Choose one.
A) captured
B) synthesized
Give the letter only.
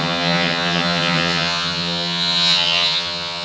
B